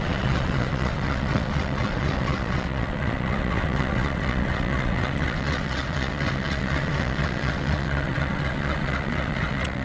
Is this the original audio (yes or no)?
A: no